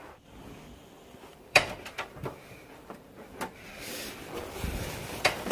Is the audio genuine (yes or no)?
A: no